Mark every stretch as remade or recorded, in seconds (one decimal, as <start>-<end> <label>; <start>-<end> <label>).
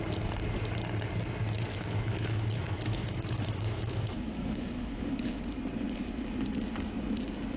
0.0-1.7 recorded; 1.7-5.4 remade; 5.4-7.6 recorded